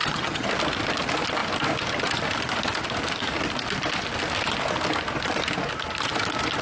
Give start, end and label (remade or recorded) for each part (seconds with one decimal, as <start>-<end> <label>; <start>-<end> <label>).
0.0-0.5 remade; 0.5-6.6 recorded